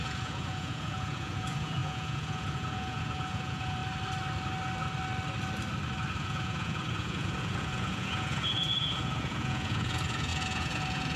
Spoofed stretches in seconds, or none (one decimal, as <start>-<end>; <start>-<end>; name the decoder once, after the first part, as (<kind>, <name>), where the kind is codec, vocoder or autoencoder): 0.0-3.8 (vocoder, Vocos); 6.1-11.2